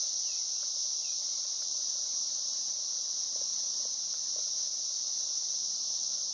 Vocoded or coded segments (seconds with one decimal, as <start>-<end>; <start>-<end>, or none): 0.8-3.1